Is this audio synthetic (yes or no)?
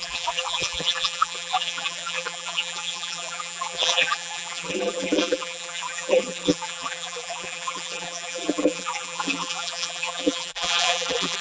yes